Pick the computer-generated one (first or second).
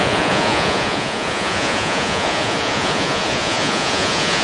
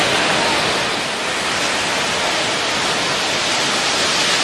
first